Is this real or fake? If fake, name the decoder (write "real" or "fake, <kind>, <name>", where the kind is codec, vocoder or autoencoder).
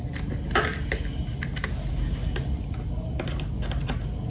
real